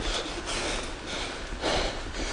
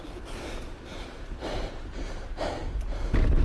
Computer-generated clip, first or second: second